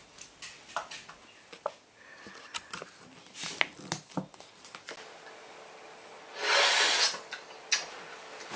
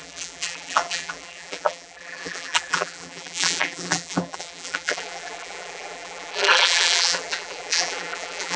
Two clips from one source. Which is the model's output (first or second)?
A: second